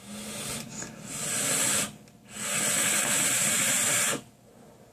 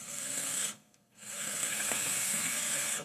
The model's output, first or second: second